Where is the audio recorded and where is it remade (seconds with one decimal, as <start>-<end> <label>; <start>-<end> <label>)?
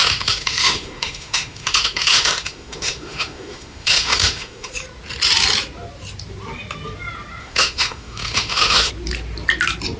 0.0-4.7 remade; 4.7-7.4 recorded; 7.4-8.9 remade; 8.9-10.0 recorded